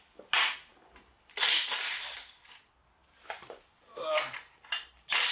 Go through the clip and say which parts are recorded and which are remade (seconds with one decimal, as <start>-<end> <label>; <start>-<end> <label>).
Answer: 0.0-5.3 recorded